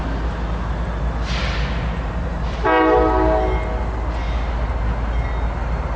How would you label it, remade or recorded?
recorded